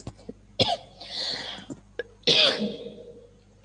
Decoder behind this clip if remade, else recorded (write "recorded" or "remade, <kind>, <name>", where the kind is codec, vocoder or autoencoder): recorded